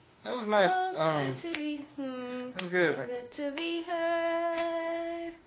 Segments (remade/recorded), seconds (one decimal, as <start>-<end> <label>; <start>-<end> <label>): 0.0-1.8 remade; 1.8-2.6 recorded; 2.6-5.5 remade